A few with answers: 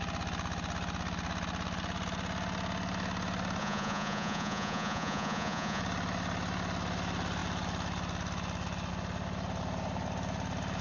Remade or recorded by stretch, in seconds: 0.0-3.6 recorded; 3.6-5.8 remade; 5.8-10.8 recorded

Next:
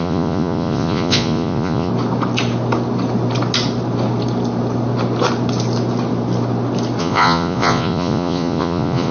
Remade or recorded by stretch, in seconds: 0.0-1.9 remade; 1.9-7.0 recorded; 7.0-9.1 remade

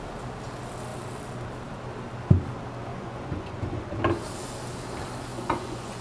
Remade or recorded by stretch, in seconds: 0.0-2.9 recorded; 2.9-4.0 remade; 4.0-5.3 recorded; 5.3-6.0 remade

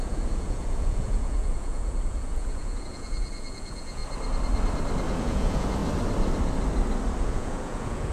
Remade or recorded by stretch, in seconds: 0.0-4.0 remade; 4.0-5.2 recorded; 5.2-5.8 remade; 5.8-7.2 recorded; 7.2-8.1 remade

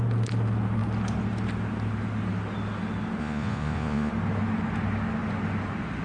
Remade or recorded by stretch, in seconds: 0.0-3.2 recorded; 3.2-4.1 remade; 4.1-6.0 recorded

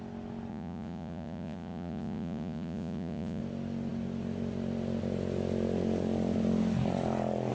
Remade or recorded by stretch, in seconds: 0.0-0.5 recorded; 0.5-3.4 remade; 3.4-7.5 recorded